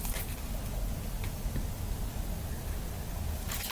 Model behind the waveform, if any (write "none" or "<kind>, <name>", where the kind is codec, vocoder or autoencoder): none